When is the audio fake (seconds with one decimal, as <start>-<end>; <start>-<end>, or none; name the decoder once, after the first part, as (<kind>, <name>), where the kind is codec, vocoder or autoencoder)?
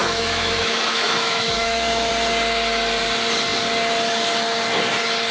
0.0-2.1 (autoencoder, DAC-VAE)